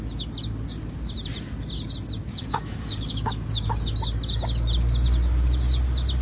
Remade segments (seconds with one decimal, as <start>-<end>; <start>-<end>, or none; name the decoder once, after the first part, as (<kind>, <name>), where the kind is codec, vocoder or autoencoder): 2.3-3.9 (codec, DAC)